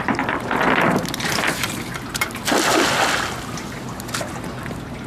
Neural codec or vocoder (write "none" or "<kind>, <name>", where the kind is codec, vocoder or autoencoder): none